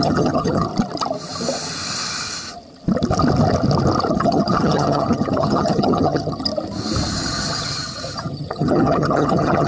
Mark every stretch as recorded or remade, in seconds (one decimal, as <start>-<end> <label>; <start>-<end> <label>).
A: 0.0-0.7 remade; 0.7-4.1 recorded; 4.1-6.5 remade; 6.5-7.1 recorded; 7.1-9.7 remade